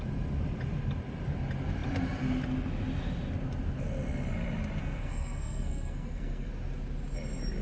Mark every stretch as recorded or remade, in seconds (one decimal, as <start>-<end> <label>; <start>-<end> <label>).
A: 0.0-4.8 recorded; 4.8-6.5 remade; 6.5-7.6 recorded